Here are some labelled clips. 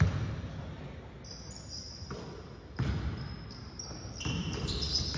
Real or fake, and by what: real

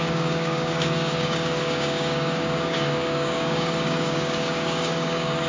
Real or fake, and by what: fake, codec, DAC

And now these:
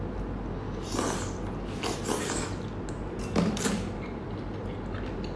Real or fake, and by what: real